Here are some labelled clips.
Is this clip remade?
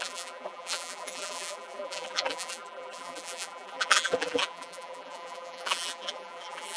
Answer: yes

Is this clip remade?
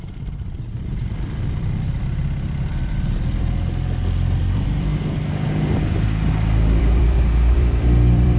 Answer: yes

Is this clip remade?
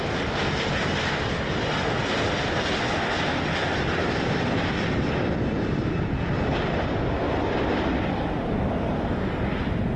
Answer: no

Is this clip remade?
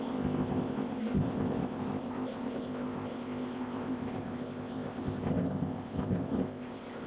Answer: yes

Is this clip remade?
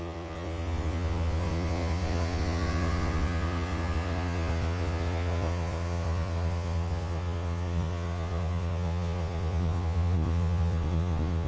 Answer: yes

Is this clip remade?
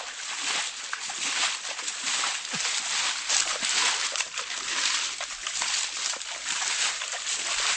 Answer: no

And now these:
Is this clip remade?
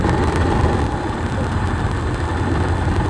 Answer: no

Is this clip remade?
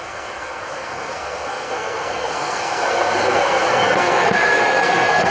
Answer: yes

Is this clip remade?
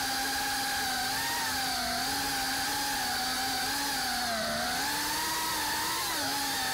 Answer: no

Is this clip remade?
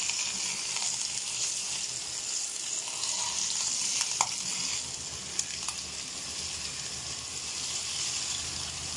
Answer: no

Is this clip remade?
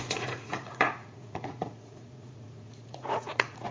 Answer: yes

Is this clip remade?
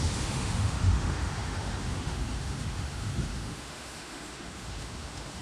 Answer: yes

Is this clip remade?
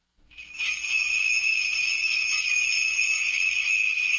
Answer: yes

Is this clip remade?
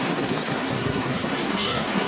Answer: yes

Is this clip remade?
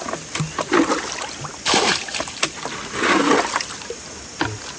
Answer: no